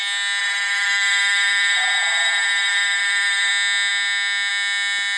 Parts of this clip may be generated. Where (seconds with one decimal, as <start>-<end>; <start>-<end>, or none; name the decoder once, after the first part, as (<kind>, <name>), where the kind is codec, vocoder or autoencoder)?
0.4-3.5 (vocoder, BigVGAN v2)